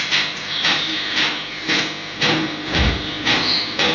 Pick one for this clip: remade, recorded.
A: recorded